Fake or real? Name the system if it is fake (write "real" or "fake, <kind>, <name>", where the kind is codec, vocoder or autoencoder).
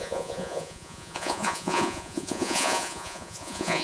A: fake, vocoder, Vocos